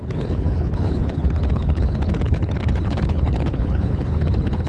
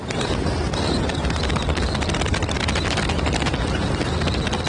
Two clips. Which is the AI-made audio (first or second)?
first